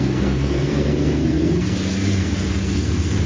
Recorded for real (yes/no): no